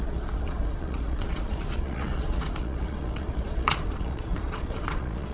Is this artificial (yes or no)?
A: yes